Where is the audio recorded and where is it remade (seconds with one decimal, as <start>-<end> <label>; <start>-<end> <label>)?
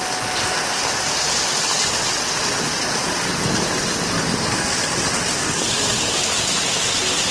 0.0-7.3 recorded